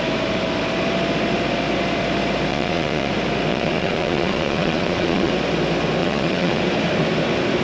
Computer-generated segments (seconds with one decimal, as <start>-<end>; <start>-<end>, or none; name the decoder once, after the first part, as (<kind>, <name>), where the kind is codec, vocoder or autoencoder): 2.5-3.1 (vocoder, Vocos); 3.5-5.3; 6.0-6.6